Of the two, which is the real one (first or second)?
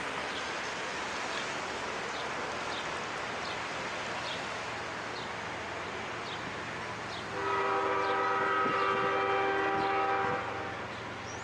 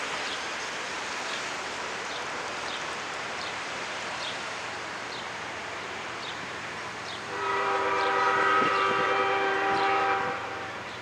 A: first